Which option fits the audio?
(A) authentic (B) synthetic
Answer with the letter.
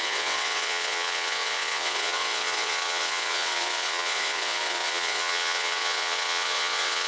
B